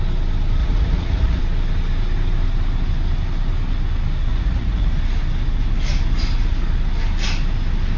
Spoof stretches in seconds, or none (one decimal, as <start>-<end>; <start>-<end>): 0.6-1.4; 4.3-4.9